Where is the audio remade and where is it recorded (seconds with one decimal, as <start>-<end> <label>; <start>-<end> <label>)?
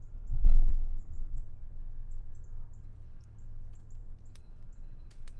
0.0-0.7 recorded; 0.7-1.4 remade; 1.4-5.4 recorded